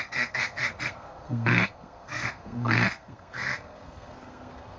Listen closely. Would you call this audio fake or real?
fake